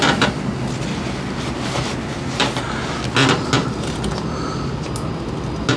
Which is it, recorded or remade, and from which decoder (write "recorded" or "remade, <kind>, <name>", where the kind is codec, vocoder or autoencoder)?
recorded